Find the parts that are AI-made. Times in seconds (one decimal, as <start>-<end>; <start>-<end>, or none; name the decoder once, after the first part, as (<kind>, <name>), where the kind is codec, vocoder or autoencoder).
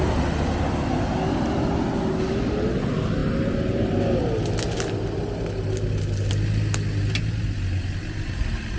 none